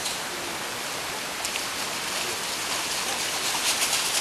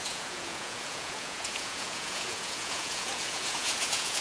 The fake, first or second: second